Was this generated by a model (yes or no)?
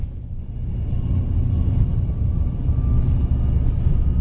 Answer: no